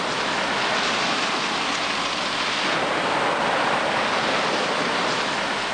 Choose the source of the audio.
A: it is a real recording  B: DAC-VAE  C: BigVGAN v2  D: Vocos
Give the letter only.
A